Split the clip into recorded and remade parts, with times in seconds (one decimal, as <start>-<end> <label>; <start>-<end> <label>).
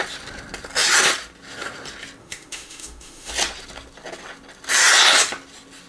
0.0-2.2 recorded; 2.2-3.3 remade; 3.3-5.9 recorded